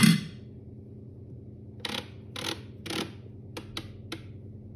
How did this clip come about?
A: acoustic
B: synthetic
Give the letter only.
A